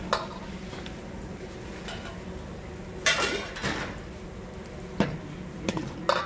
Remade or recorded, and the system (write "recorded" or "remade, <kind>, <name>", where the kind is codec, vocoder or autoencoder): recorded